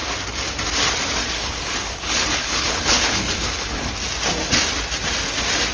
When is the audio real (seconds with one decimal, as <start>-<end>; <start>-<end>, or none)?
0.0-1.4; 3.9-5.7

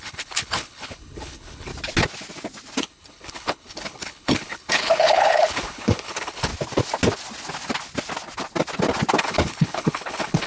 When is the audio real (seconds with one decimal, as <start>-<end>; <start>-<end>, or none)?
1.7-2.8; 6.5-9.2

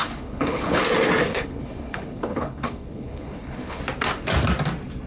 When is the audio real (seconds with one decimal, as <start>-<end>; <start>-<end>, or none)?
0.8-1.3; 3.8-5.1

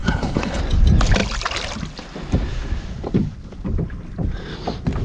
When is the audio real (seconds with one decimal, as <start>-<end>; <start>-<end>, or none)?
0.6-5.0

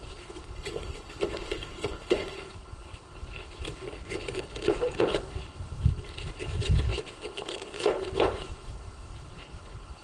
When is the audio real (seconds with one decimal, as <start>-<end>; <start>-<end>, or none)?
none

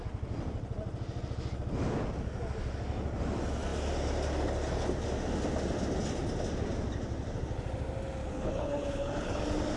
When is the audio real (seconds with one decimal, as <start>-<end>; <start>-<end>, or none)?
0.0-8.2; 9.4-9.8